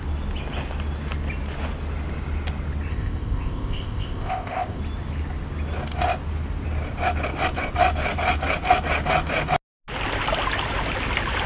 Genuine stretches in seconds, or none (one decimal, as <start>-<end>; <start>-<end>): 0.0-2.9; 4.8-11.5